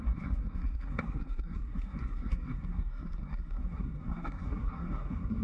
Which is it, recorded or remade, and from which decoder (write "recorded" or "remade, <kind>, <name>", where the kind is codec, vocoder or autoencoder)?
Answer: remade, codec, SNAC